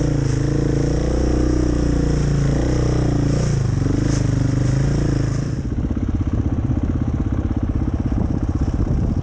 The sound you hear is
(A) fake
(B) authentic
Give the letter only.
B